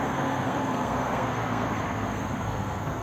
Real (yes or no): no